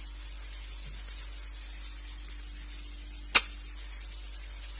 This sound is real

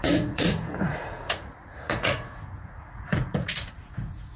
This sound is fake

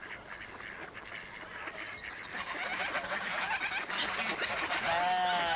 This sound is real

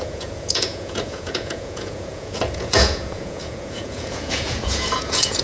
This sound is fake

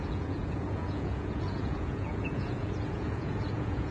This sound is fake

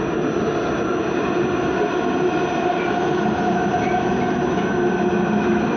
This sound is real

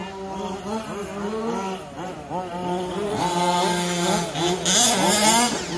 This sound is real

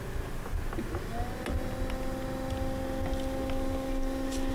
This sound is real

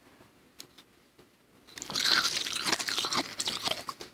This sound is real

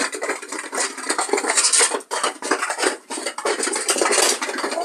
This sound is real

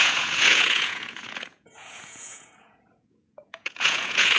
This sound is fake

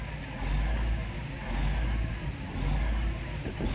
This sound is real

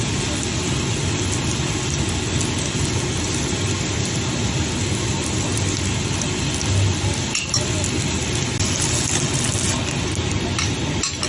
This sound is real